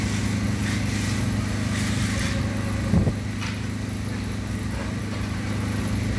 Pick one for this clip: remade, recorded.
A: recorded